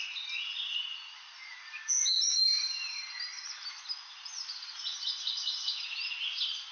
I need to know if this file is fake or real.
real